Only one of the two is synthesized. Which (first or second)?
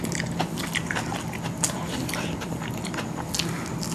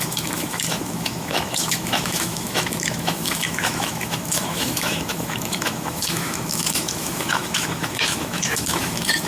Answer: second